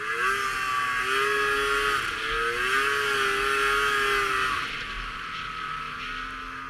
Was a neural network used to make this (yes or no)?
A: no